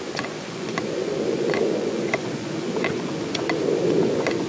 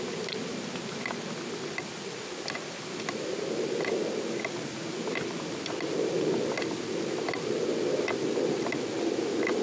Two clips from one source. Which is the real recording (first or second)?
second